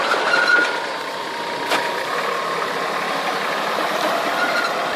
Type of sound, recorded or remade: recorded